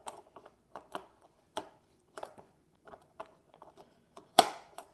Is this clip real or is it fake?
fake